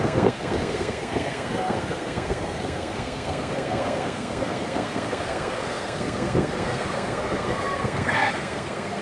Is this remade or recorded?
remade